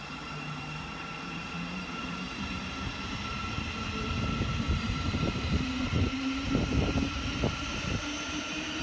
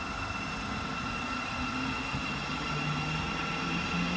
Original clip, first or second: second